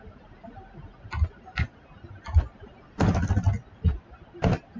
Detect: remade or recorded recorded